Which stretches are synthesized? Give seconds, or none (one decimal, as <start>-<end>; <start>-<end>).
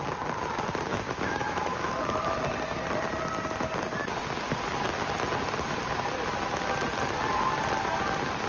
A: 0.9-2.0